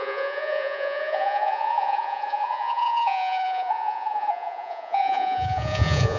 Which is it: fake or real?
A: fake